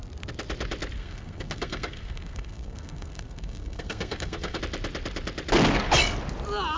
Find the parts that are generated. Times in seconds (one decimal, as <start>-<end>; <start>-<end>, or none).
1.0-4.6

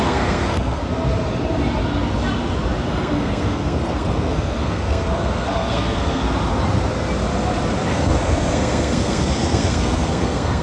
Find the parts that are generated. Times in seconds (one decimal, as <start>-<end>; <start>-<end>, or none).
0.0-0.8; 2.9-6.2; 7.9-10.6

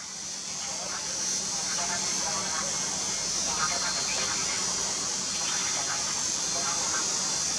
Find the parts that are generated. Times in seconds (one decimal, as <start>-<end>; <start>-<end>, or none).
none

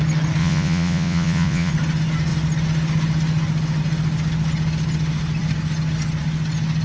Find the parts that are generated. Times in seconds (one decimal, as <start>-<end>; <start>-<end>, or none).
0.4-1.7

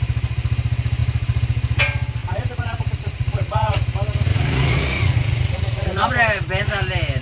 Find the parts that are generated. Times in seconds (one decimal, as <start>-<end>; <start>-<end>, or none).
2.2-3.8; 4.3-6.1

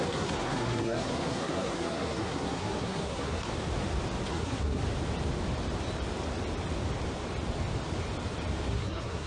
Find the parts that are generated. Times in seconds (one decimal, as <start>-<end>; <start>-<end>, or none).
0.0-3.5; 4.3-4.8; 8.7-9.3